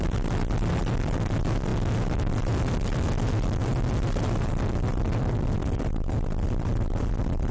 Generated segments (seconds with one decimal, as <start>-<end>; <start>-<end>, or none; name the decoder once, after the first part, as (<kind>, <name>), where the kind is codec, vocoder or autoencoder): 0.0-1.7 (vocoder, BigVGAN v2); 2.3-7.5